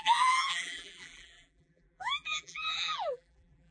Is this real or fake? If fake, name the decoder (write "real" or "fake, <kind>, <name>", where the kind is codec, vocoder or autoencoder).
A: fake, vocoder, BigVGAN v2